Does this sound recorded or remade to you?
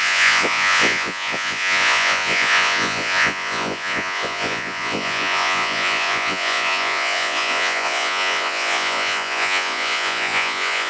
remade